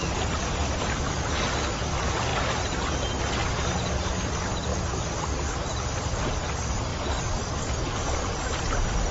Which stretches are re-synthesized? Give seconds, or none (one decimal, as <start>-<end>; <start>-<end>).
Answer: 4.7-6.2